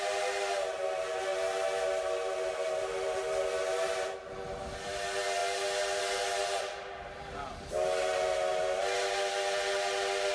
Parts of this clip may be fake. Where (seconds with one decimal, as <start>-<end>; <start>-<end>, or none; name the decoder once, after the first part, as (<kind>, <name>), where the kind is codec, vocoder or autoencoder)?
none